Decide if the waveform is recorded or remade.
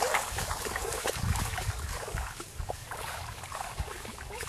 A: remade